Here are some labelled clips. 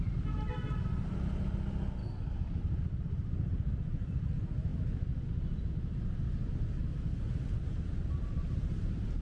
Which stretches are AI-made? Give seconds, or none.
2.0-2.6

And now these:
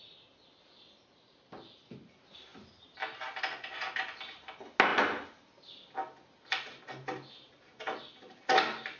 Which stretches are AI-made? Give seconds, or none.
none

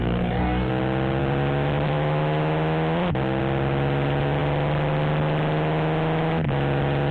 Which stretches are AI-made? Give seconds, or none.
0.0-0.7

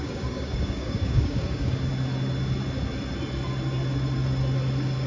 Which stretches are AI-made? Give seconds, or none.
0.0-1.9

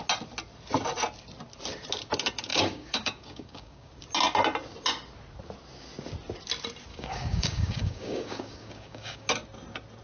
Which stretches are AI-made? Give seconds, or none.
2.5-3.9; 6.9-9.3